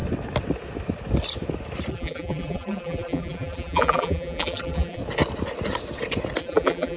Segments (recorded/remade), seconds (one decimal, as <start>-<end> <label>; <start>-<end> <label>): 0.0-1.9 recorded; 1.9-5.0 remade; 5.0-6.4 recorded; 6.4-7.0 remade